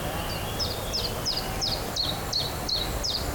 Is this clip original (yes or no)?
yes